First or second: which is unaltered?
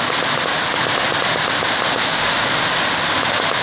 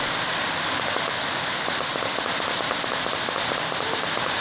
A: first